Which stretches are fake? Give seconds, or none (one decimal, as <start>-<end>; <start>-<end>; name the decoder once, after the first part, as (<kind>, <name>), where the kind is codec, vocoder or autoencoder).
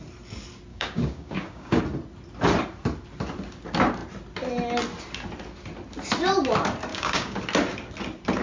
0.7-1.8 (codec, DAC); 6.9-7.4